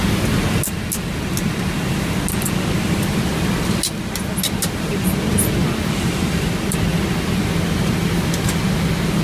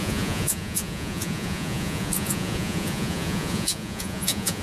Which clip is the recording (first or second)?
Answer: first